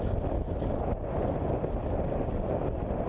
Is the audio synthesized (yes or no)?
no